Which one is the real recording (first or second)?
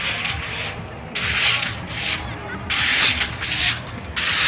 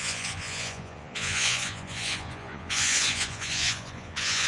first